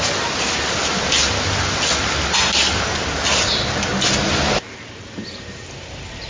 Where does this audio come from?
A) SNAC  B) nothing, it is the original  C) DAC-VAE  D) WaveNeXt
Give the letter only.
B